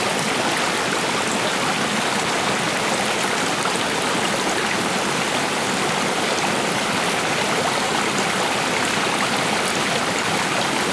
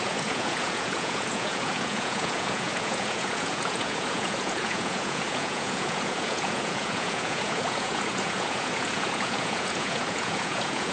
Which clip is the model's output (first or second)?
second